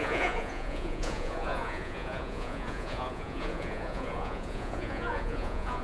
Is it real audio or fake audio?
fake